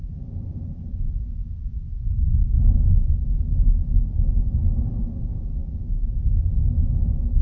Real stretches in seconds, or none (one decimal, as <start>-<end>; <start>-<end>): 0.0-0.8; 4.6-5.6; 6.2-7.4